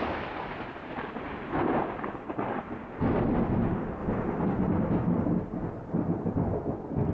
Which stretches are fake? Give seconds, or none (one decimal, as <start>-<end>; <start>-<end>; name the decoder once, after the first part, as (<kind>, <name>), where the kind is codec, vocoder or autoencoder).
none

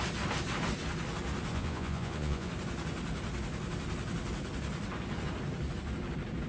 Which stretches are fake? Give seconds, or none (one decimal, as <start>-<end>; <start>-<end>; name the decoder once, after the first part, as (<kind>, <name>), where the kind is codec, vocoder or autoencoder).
1.5-2.5 (vocoder, Vocos)

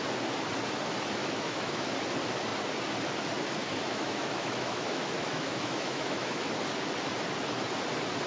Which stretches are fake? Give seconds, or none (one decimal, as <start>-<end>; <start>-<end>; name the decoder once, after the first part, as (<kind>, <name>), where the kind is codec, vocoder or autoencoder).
1.2-1.9 (autoencoder, DAC-VAE); 3.6-6.5

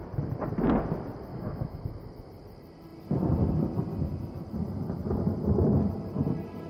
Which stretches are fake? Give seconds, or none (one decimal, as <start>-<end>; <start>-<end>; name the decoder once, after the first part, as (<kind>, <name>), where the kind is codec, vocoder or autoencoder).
1.3-1.8 (autoencoder, DAC-VAE)

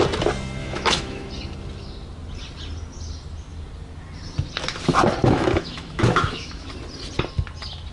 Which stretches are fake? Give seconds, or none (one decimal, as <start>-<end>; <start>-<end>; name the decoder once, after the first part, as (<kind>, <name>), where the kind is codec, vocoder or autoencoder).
0.6-1.3 (autoencoder, DAC-VAE); 5.2-6.7

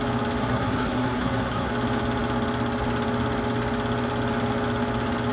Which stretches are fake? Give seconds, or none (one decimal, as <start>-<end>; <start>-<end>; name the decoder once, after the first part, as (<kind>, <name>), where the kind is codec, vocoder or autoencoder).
0.4-1.7 (codec, SNAC)

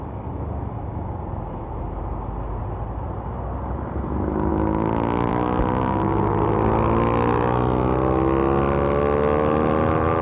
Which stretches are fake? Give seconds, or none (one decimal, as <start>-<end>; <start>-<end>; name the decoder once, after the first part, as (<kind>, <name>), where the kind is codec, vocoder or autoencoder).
none

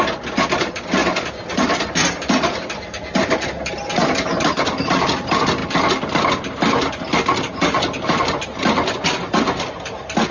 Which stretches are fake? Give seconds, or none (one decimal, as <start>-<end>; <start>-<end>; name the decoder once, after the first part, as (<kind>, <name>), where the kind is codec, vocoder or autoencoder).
none